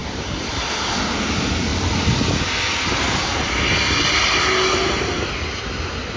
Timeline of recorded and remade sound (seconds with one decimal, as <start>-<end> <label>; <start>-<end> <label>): 0.0-0.5 remade; 0.5-6.2 recorded